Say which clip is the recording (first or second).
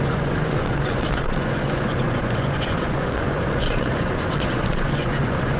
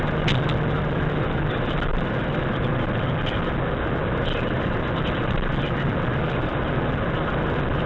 second